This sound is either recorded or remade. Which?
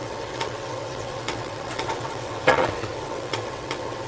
remade